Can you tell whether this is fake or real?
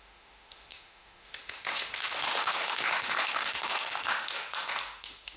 fake